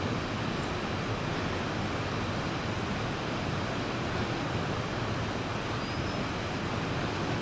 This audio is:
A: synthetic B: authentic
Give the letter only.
B